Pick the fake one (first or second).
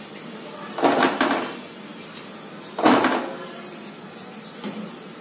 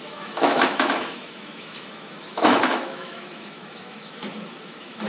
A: second